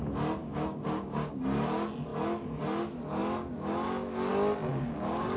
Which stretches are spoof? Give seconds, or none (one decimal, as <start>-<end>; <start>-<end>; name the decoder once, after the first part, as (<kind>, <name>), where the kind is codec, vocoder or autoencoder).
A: 0.4-1.3 (codec, DAC); 4.7-5.4